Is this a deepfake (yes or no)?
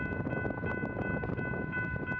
no